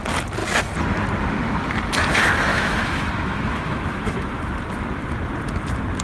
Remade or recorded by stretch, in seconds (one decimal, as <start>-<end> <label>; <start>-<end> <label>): 0.0-2.5 recorded; 2.5-4.4 remade; 4.4-6.0 recorded